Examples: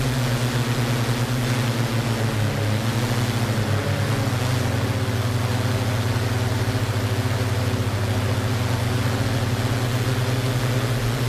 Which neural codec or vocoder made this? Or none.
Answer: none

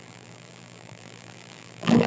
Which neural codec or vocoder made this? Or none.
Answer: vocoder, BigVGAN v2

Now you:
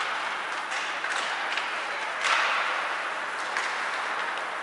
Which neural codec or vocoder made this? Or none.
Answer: none